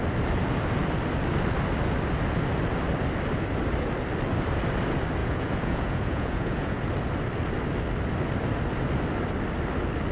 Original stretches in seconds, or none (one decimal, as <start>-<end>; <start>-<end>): 0.0-5.2; 6.8-10.1